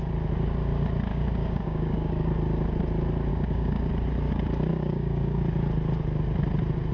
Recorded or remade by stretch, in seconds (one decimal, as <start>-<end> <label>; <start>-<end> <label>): 0.0-1.1 recorded; 1.1-2.3 remade; 2.3-3.3 recorded; 3.3-3.9 remade; 3.9-4.7 recorded; 4.7-5.4 remade; 5.4-6.9 recorded